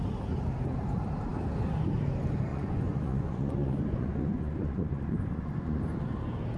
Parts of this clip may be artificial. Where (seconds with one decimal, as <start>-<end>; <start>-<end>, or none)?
2.5-5.8